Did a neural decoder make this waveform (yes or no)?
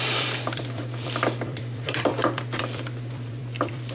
yes